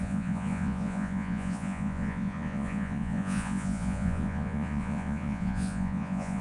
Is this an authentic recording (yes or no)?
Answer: no